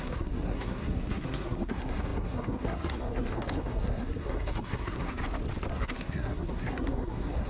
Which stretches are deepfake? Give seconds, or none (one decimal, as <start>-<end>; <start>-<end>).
0.0-5.2; 5.7-7.5